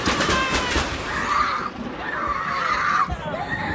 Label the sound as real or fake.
real